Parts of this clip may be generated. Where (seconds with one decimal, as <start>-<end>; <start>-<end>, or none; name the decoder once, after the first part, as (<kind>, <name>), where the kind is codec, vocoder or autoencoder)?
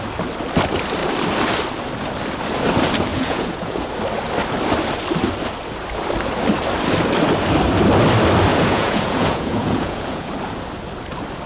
3.1-3.9 (vocoder, Vocos); 8.5-10.3